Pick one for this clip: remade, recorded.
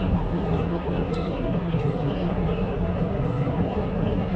remade